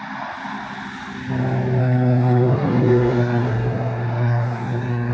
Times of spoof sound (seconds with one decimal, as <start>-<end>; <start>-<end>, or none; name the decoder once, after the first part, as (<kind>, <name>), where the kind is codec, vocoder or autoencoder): 1.8-5.1 (codec, SNAC)